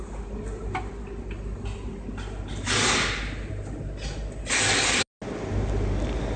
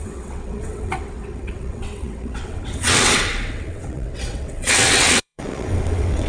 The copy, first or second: second